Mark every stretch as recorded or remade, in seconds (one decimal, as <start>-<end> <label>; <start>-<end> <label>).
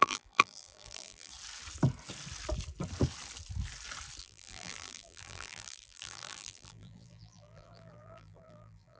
0.0-1.3 remade; 1.3-4.2 recorded; 4.2-9.0 remade